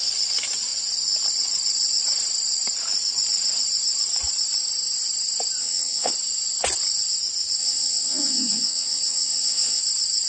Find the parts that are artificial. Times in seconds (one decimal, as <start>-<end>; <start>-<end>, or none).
5.6-6.1; 7.6-9.8